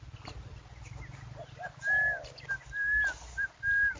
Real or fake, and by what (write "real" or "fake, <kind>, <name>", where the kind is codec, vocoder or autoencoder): real